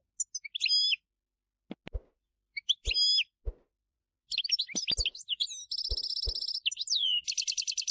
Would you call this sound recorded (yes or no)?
yes